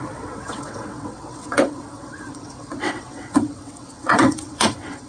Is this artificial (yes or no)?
yes